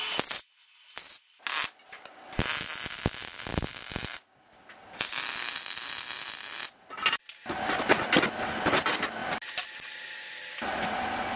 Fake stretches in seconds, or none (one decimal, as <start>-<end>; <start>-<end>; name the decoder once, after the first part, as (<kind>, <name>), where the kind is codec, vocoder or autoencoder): 3.5-5.9 (vocoder, BigVGAN v2)